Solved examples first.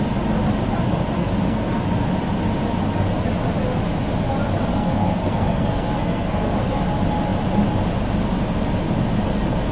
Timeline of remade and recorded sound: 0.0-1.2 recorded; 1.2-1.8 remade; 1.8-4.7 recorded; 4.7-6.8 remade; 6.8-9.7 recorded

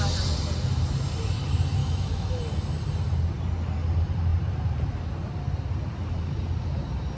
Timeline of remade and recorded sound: 0.0-1.8 recorded; 1.8-2.4 remade; 2.4-7.2 recorded

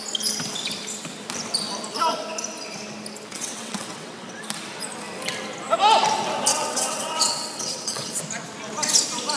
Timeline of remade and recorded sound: 0.0-3.3 recorded; 3.3-4.4 remade; 4.4-6.5 recorded; 6.5-8.2 remade; 8.2-9.4 recorded

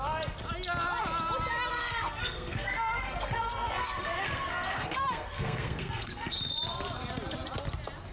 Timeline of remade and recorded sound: 0.0-1.7 recorded; 1.7-6.4 remade; 6.4-8.1 recorded

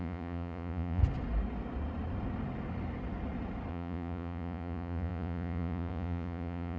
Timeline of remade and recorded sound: 0.0-1.0 remade; 1.0-3.7 recorded; 3.7-6.8 remade

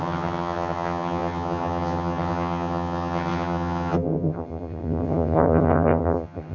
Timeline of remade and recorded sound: 0.0-6.5 remade

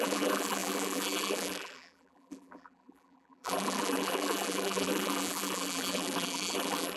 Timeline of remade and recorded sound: 0.0-7.0 remade

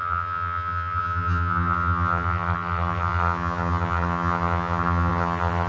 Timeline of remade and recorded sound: 0.0-5.7 remade